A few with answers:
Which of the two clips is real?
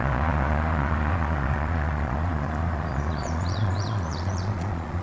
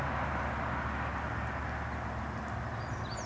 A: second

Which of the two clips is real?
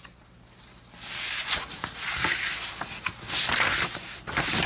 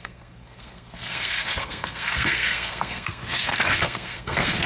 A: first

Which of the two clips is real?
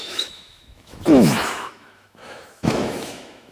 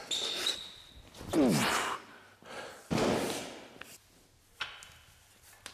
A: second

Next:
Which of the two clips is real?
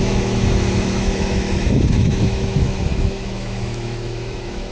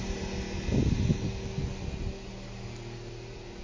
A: second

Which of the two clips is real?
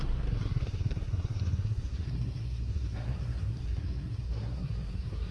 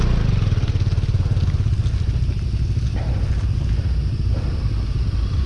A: second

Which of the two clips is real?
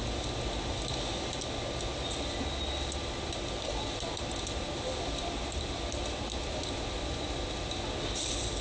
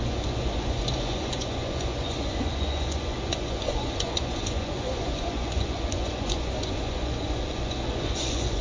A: first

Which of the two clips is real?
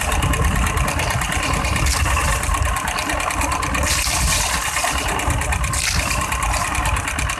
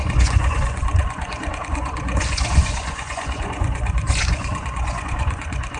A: first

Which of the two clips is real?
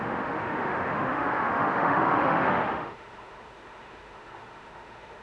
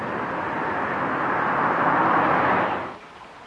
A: second